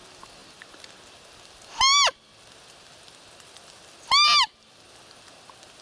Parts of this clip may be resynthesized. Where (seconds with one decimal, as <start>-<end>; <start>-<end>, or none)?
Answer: none